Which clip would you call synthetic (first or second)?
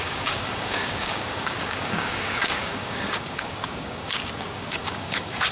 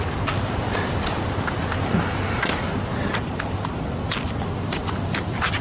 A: first